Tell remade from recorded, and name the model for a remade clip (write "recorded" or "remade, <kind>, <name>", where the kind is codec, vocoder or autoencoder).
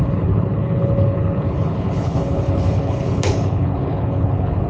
remade, codec, HILCodec